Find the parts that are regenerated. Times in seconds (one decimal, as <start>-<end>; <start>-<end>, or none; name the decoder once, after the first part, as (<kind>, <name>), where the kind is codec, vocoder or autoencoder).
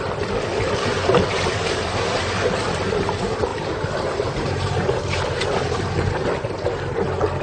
0.9-2.2 (vocoder, BigVGAN v2); 3.5-6.7